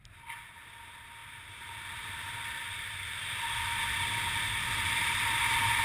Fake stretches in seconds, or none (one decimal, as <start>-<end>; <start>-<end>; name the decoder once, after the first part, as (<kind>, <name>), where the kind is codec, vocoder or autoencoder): none